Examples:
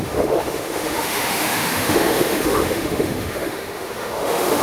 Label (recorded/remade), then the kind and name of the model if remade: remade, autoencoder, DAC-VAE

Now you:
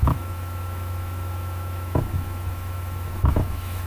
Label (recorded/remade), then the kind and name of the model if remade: remade, autoencoder, DAC-VAE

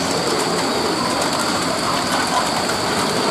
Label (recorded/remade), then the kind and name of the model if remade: recorded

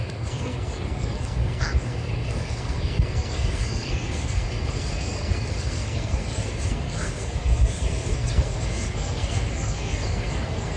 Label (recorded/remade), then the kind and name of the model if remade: remade, codec, SNAC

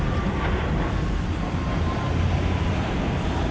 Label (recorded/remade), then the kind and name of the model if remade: recorded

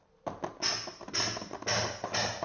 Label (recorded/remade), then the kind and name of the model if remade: recorded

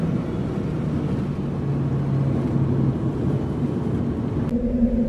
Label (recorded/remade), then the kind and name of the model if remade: recorded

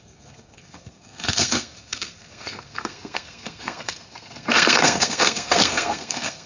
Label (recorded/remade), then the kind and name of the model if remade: remade, codec, SNAC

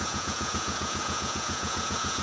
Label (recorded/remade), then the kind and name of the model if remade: remade, vocoder, Vocos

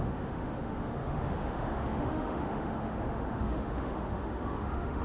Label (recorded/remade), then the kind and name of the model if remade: remade, autoencoder, DAC-VAE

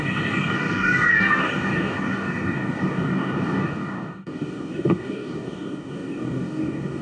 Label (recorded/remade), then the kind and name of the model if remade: remade, codec, DAC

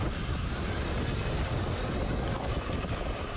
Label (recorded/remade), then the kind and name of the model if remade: recorded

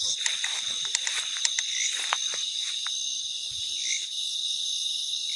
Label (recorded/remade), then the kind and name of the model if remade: recorded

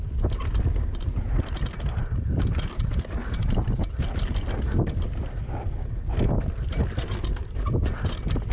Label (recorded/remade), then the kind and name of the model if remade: recorded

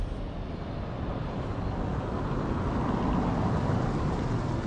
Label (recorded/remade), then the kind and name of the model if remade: recorded